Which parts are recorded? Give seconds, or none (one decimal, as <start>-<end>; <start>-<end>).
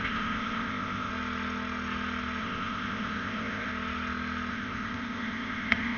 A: 1.1-2.4; 3.7-4.5